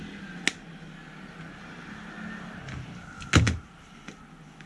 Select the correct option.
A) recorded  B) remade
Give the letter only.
A